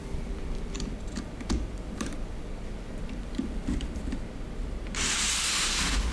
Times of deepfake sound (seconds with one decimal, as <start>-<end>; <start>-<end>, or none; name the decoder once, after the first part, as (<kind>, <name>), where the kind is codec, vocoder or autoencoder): 0.0-3.7 (vocoder, BigVGAN v2)